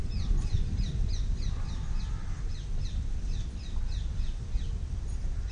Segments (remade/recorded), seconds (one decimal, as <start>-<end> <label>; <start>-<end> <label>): 0.0-5.5 recorded